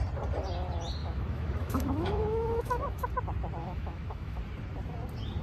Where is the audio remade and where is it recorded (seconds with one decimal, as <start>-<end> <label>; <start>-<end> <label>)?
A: 0.0-1.0 recorded; 1.0-3.1 remade; 3.1-3.6 recorded; 3.6-4.4 remade; 4.4-5.4 recorded